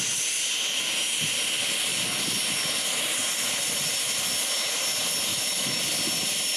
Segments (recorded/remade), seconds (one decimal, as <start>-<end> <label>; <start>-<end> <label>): 0.0-5.3 recorded; 5.3-5.8 remade; 5.8-6.6 recorded